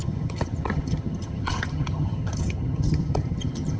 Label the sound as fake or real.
fake